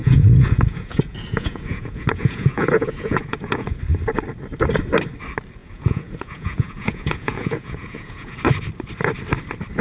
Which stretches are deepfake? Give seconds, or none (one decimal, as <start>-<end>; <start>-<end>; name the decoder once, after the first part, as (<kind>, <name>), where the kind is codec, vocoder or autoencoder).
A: 0.0-3.8 (vocoder, Vocos); 5.6-8.4